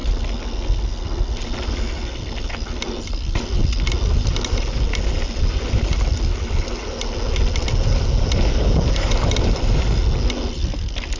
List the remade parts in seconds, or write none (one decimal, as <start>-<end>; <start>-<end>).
none